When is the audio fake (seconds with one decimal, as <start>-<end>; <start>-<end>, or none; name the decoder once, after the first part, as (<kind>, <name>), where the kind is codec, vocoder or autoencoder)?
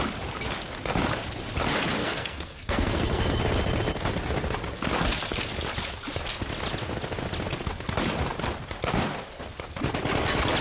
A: 2.0-3.4 (codec, SNAC)